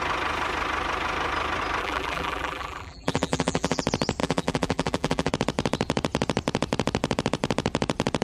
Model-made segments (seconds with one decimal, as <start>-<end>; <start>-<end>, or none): 1.8-3.8; 4.2-5.3